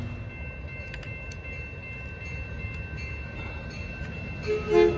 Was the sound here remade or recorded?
recorded